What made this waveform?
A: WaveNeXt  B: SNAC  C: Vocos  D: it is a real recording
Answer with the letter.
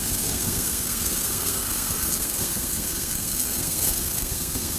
B